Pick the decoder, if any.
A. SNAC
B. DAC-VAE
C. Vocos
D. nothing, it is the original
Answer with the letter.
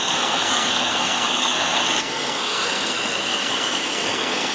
A